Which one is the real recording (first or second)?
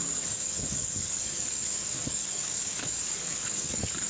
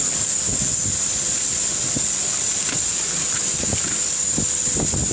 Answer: second